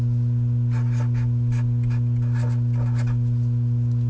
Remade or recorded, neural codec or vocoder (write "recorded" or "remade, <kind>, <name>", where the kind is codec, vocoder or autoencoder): recorded